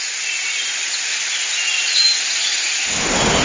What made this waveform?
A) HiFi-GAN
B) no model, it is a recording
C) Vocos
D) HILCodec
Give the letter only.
B